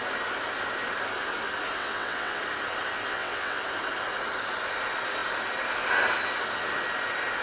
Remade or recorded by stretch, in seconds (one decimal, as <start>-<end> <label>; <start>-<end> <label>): 0.0-1.8 recorded; 1.8-2.4 remade; 2.4-3.1 recorded; 3.1-3.6 remade; 3.6-7.4 recorded